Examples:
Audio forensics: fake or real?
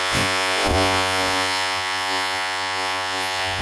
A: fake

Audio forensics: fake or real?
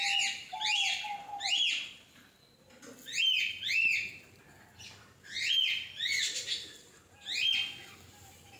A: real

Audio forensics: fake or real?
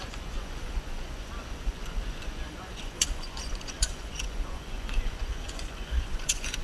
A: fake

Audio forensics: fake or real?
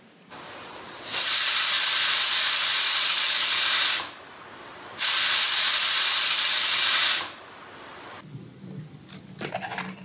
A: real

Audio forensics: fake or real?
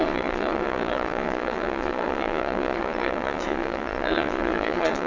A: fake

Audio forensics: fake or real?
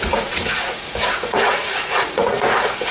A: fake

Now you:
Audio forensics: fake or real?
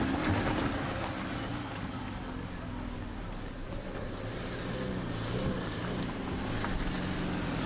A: real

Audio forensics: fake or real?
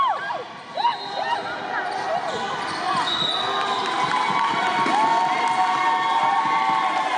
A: real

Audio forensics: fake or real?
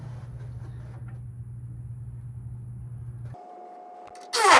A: real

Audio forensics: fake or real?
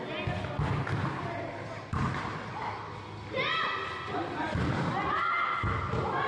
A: real